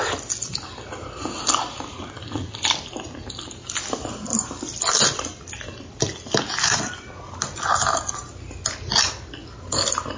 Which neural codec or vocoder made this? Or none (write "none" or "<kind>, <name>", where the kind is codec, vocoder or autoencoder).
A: none